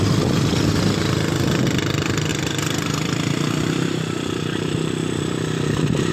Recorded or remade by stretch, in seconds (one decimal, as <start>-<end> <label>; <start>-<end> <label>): 0.0-2.3 recorded; 2.3-6.1 remade